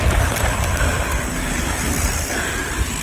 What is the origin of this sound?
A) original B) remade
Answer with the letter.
A